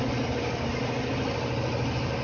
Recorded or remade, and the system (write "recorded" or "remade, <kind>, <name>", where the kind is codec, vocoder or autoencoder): recorded